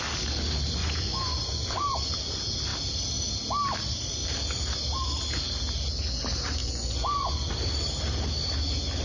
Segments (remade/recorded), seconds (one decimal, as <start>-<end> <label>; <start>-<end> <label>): 0.0-0.8 recorded; 0.8-1.9 remade; 1.9-6.6 recorded; 6.6-7.5 remade; 7.5-9.0 recorded

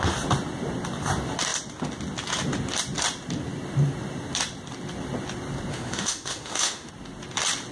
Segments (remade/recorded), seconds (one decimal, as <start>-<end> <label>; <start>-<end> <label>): 0.0-5.7 recorded; 5.7-6.9 remade; 6.9-7.7 recorded

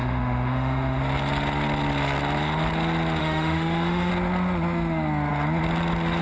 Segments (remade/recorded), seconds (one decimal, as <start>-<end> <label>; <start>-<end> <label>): 0.0-1.0 remade; 1.0-3.2 recorded; 3.2-4.1 remade; 4.1-6.2 recorded